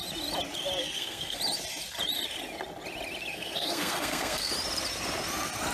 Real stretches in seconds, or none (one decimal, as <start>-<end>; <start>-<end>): 0.0-0.8; 1.4-3.3; 4.5-5.7